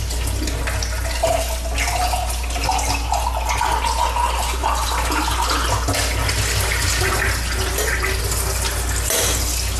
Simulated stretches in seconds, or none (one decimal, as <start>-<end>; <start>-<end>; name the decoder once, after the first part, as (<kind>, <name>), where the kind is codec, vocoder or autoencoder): none